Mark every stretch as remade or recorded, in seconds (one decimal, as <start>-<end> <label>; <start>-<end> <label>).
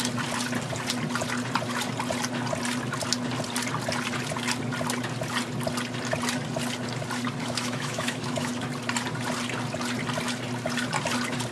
0.0-7.4 recorded; 7.4-8.5 remade; 8.5-11.5 recorded